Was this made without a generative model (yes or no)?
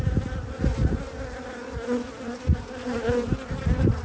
yes